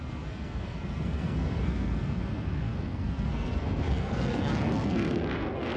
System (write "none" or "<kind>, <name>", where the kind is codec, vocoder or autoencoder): codec, SNAC